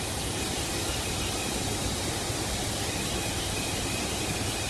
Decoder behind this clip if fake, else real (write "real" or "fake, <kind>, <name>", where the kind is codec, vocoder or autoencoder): real